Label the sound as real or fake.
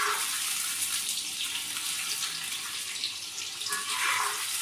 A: fake